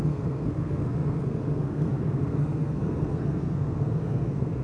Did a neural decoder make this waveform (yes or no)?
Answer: yes